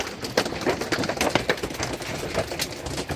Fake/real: real